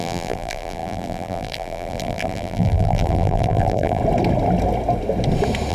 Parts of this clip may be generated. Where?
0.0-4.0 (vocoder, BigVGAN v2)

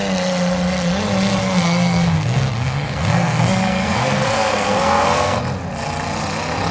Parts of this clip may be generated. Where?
1.4-5.4 (codec, SNAC)

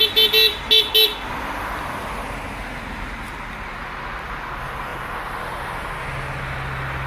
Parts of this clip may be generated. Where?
none

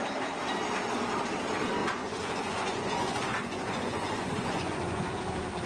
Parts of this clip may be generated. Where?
1.8-5.2 (vocoder, Vocos)

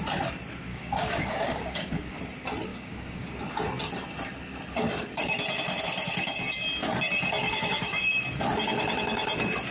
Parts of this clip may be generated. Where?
0.7-2.2 (codec, DAC); 2.7-3.3; 7.4-8.2